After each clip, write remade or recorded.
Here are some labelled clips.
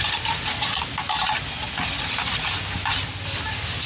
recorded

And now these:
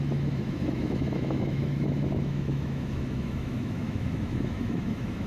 remade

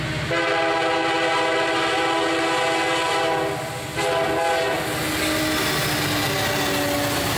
recorded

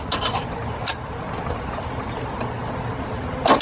recorded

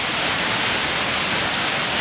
recorded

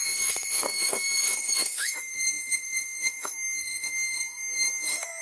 remade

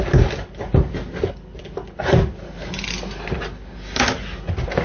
recorded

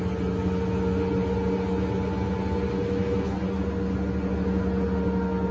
recorded